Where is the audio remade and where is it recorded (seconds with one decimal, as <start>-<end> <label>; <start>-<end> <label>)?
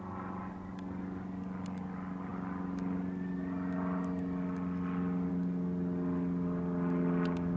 0.0-7.6 recorded